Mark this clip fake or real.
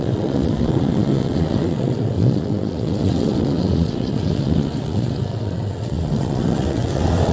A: fake